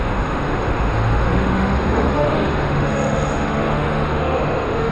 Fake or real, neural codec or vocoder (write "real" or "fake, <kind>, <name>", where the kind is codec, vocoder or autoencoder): fake, autoencoder, DAC-VAE